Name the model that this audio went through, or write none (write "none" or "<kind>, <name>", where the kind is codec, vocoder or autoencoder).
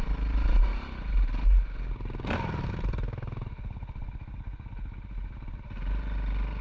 none